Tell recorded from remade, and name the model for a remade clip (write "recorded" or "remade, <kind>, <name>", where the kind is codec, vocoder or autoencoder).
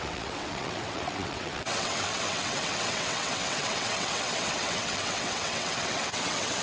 remade, vocoder, WaveNeXt